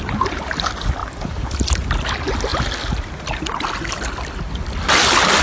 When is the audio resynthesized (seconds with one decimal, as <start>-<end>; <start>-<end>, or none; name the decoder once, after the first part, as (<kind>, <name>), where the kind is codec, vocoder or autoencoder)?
none